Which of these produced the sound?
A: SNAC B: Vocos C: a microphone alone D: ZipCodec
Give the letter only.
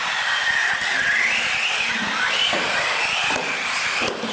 C